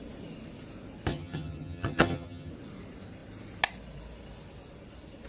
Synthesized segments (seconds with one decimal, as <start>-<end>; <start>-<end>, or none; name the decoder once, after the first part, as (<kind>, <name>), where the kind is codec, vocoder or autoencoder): 1.1-2.5 (vocoder, HiFi-GAN)